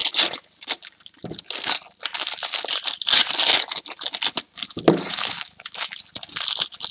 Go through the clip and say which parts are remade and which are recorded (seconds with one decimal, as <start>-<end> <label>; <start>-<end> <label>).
0.0-5.1 recorded; 5.1-5.9 remade; 5.9-6.9 recorded